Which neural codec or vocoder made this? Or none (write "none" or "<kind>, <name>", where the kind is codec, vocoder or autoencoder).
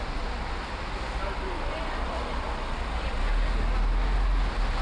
none